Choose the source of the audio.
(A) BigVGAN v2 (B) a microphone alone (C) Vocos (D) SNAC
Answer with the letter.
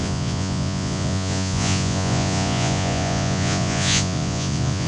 C